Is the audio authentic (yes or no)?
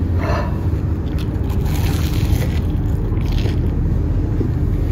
yes